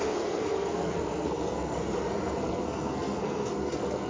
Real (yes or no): no